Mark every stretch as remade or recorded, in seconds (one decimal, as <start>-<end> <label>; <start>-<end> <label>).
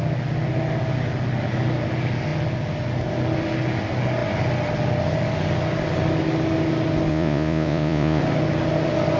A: 0.0-7.1 recorded; 7.1-8.2 remade; 8.2-9.2 recorded